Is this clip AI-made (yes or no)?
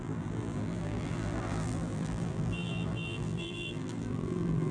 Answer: yes